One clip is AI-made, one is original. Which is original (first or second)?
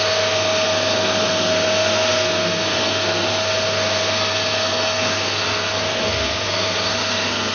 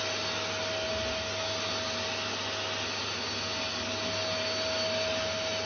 second